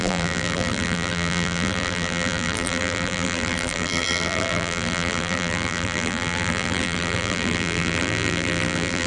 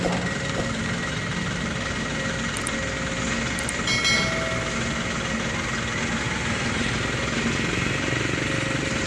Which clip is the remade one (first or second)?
first